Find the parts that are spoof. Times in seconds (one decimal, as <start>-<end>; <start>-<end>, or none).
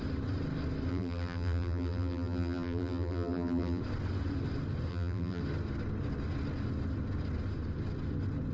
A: 0.9-3.8; 4.9-5.4